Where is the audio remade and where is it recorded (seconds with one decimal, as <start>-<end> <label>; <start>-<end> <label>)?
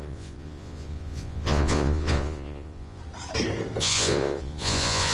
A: 0.0-3.0 remade; 3.0-3.8 recorded; 3.8-5.1 remade